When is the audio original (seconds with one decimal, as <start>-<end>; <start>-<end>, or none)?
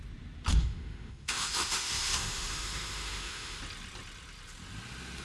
0.0-0.5; 3.6-5.2